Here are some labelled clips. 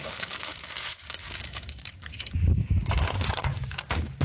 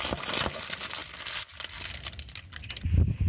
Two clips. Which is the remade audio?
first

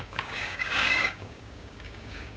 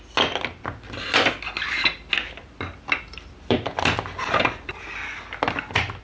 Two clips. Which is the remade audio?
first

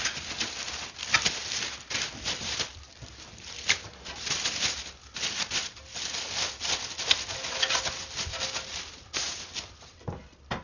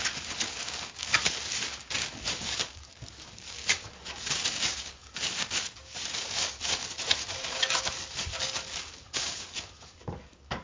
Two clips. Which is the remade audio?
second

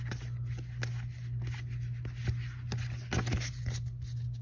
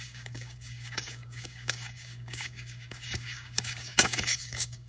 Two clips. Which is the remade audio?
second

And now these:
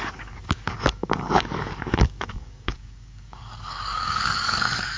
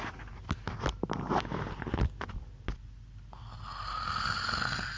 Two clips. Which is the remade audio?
first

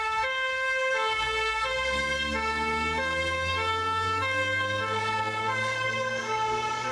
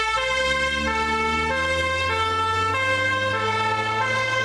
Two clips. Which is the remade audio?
first